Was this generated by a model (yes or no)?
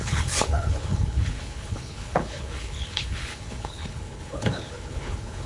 yes